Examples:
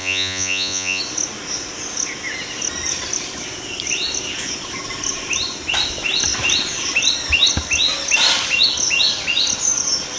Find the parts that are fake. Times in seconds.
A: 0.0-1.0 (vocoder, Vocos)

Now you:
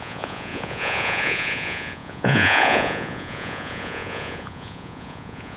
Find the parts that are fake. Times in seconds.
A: 0.0-5.6 (vocoder, Vocos)

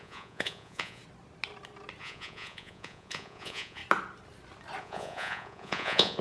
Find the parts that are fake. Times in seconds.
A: 0.0-1.0 (vocoder, Vocos); 2.0-3.8; 4.8-6.2

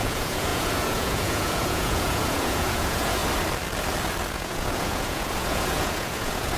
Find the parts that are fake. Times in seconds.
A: 0.0-3.2 (vocoder, Vocos); 4.3-6.6

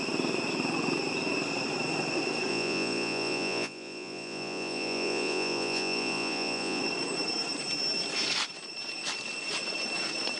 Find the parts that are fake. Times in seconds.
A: 2.5-6.8 (vocoder, Vocos)

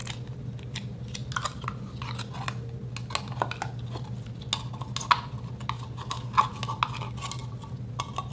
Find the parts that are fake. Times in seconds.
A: none

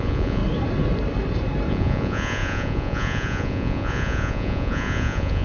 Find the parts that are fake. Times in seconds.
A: 0.0-0.4 (vocoder, Vocos); 1.7-5.4

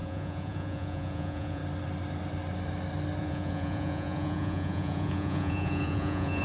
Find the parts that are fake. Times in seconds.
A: 0.0-1.6 (vocoder, Vocos); 3.2-6.4